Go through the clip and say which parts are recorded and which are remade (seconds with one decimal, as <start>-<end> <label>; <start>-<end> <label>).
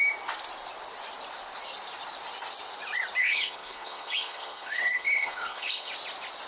0.0-3.2 recorded; 3.2-5.9 remade; 5.9-6.5 recorded